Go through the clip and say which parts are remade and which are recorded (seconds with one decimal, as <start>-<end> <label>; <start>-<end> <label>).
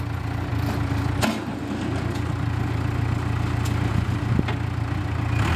0.0-5.6 recorded